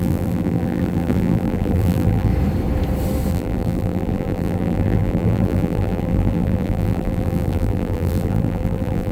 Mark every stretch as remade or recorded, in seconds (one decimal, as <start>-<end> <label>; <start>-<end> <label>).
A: 0.0-2.3 remade; 2.3-3.3 recorded; 3.3-9.1 remade